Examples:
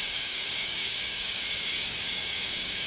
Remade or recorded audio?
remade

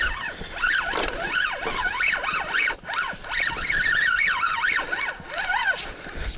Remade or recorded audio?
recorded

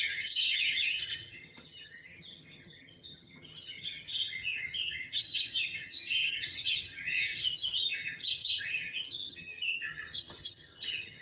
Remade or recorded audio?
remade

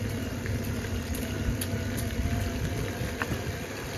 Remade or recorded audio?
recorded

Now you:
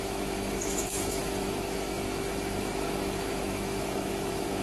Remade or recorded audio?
remade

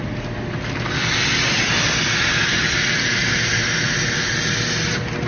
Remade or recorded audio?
recorded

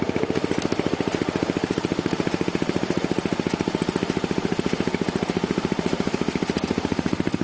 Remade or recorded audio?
remade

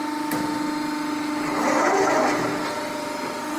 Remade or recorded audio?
recorded